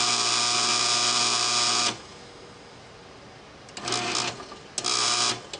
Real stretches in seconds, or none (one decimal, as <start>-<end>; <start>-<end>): 0.0-5.6